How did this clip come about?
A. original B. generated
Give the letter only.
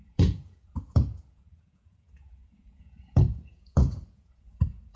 B